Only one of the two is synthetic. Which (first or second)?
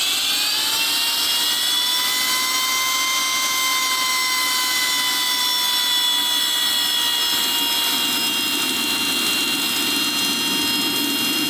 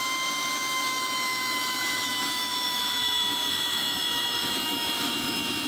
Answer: second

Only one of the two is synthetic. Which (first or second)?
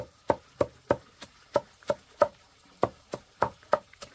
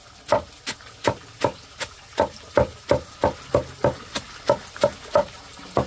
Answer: first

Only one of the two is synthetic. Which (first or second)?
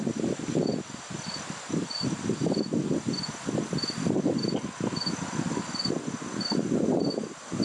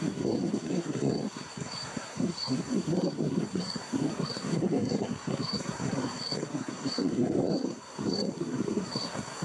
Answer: second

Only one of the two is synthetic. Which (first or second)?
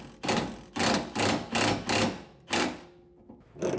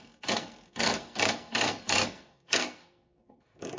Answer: second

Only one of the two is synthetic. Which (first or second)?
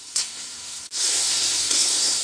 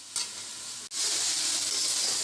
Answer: first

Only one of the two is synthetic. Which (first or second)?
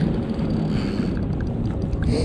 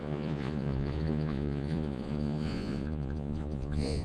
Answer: second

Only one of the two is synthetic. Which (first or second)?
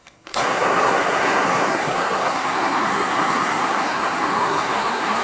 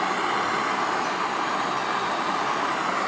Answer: first